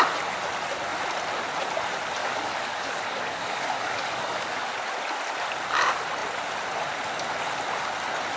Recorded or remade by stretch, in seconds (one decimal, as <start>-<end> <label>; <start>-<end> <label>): 0.0-2.2 recorded; 2.2-4.7 remade; 4.7-8.4 recorded